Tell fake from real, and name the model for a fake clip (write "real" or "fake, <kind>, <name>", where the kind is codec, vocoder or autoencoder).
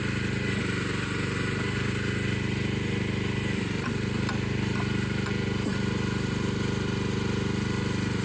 fake, vocoder, BigVGAN v2